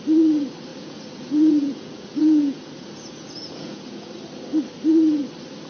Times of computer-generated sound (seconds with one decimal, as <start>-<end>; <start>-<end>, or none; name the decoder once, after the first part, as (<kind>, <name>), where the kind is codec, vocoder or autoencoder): 0.7-4.1 (vocoder, Vocos)